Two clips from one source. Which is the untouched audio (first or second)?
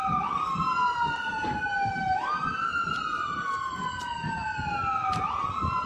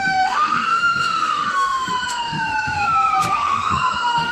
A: first